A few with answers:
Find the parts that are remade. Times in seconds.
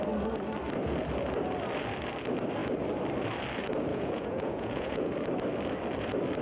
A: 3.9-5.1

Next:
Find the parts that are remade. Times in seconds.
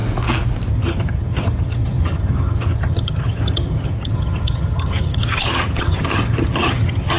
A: 0.7-7.2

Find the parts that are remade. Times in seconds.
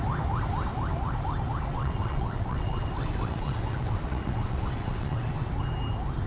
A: 1.7-5.5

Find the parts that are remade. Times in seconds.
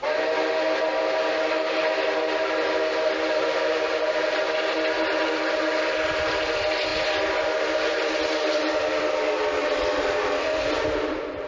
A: none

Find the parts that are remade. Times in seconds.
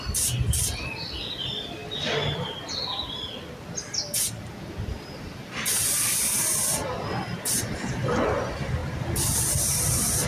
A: 0.0-1.8; 4.9-6.8; 7.5-10.3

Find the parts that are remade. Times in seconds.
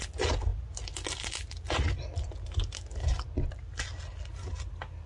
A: none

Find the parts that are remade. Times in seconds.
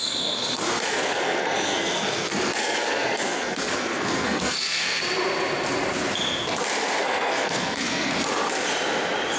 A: 0.0-5.0; 7.0-8.1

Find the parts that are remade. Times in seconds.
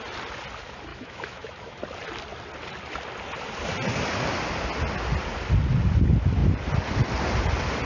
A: 0.9-1.8